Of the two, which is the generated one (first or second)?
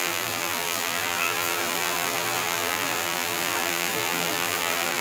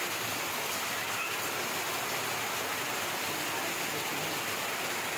first